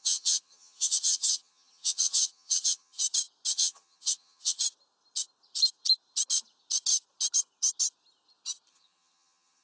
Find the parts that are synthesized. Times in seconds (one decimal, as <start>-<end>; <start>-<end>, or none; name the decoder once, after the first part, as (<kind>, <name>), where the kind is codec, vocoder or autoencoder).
0.0-3.0 (vocoder, HiFi-GAN); 3.5-4.6; 8.7-9.6